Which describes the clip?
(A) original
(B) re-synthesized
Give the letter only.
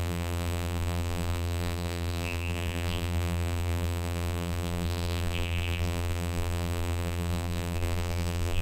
B